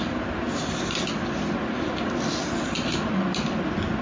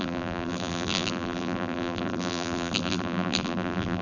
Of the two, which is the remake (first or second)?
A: second